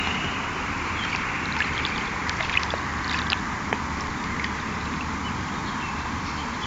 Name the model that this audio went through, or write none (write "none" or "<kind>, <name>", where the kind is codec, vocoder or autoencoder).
vocoder, BigVGAN v2